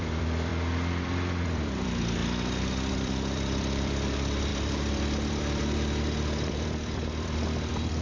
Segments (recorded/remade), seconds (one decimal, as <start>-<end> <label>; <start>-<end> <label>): 0.0-0.5 remade; 0.5-1.0 recorded; 1.0-2.2 remade; 2.2-2.9 recorded; 2.9-8.0 remade